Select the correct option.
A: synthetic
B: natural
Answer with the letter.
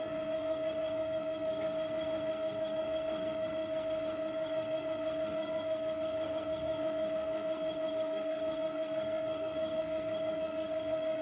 A